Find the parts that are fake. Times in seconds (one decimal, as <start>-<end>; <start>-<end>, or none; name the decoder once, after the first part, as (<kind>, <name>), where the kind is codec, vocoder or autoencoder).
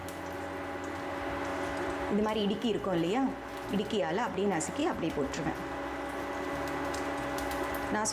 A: none